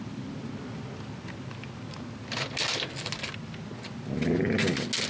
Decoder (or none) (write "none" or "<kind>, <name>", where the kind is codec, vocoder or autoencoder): none